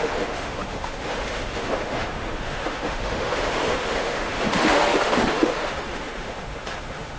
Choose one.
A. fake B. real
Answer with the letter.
A